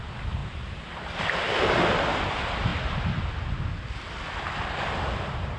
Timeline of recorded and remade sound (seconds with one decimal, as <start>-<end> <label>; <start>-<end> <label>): 0.0-5.6 recorded